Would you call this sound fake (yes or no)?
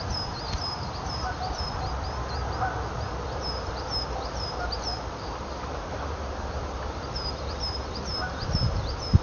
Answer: yes